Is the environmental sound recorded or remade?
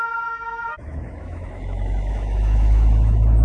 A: remade